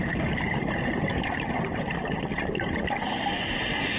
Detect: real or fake real